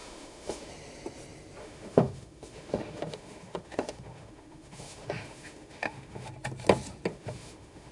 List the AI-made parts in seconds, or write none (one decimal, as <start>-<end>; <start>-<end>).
0.0-0.7; 1.6-6.3; 7.1-7.9